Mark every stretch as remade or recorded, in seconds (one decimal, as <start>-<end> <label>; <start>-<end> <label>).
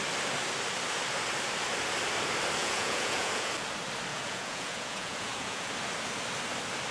0.0-2.6 recorded; 2.6-3.5 remade; 3.5-4.1 recorded; 4.1-5.7 remade; 5.7-6.9 recorded